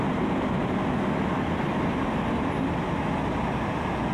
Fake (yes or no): no